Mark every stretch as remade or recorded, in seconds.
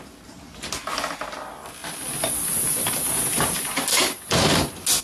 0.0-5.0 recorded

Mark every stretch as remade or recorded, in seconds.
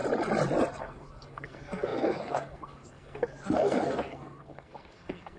0.0-0.8 recorded; 0.8-5.4 remade